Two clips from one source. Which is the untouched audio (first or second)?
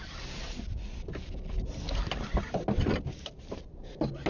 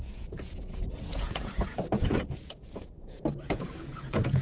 first